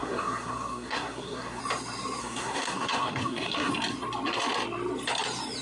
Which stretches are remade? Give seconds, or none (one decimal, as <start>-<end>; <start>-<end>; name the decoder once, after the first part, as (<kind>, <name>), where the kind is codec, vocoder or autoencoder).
0.0-1.6 (codec, SNAC); 2.2-3.7